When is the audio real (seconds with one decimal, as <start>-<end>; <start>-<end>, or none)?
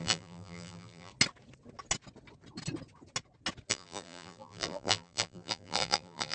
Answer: 1.1-3.7